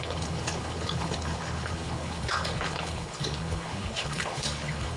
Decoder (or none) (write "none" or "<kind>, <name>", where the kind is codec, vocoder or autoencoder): codec, HILCodec